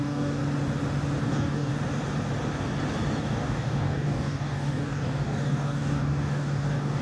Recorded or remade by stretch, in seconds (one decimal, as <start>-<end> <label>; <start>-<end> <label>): 0.0-0.4 remade; 0.4-1.2 recorded; 1.2-1.7 remade; 1.7-3.2 recorded; 3.2-7.0 remade